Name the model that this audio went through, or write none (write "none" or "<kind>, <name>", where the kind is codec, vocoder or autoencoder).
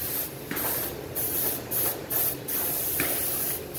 none